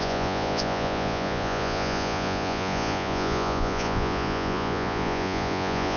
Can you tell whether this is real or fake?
fake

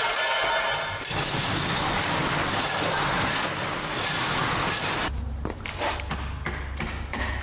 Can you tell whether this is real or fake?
real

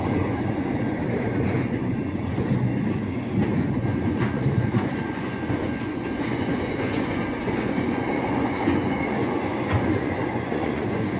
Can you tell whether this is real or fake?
fake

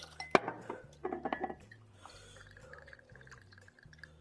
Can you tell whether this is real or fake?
real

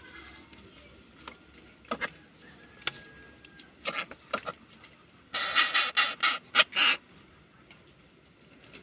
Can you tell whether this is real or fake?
real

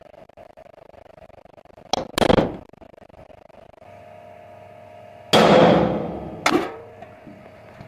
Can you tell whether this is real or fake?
real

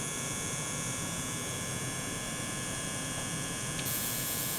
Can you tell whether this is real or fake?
fake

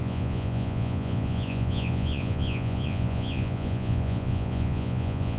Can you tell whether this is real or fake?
fake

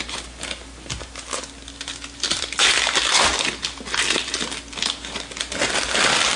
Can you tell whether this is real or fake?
real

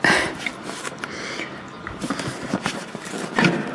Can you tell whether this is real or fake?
real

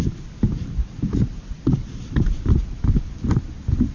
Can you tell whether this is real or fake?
real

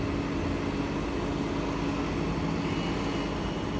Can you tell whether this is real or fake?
real